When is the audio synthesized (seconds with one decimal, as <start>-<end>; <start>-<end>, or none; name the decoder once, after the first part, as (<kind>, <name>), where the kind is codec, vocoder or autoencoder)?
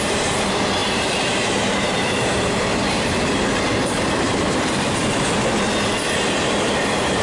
0.0-5.0 (vocoder, BigVGAN v2); 6.4-7.2